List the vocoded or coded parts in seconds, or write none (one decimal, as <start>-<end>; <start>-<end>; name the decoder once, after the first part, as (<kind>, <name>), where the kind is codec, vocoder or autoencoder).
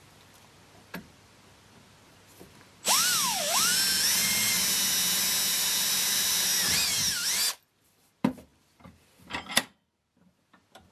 0.0-3.7 (vocoder, BigVGAN v2); 5.9-6.5; 7.6-10.9